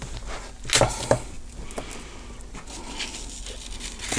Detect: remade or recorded recorded